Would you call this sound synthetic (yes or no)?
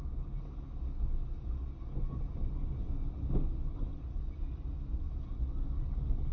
no